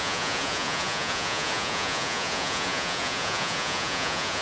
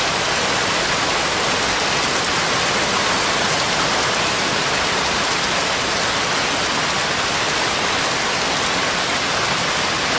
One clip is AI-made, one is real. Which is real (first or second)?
second